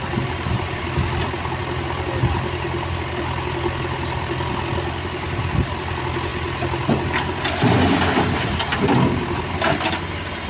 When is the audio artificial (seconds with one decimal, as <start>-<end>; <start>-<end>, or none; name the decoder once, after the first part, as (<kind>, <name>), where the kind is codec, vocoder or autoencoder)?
none